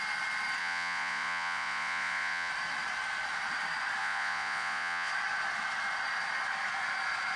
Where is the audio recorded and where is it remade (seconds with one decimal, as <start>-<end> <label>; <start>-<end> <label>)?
0.0-0.6 recorded; 0.6-2.5 remade; 2.5-4.0 recorded; 4.0-5.1 remade; 5.1-7.4 recorded